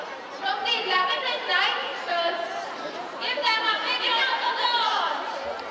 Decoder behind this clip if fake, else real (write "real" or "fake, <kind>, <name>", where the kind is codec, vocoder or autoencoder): fake, vocoder, BigVGAN v2